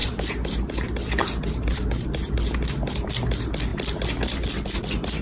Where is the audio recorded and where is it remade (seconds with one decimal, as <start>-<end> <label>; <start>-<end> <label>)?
0.0-3.1 remade; 3.1-5.2 recorded